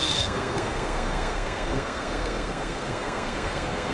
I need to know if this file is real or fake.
fake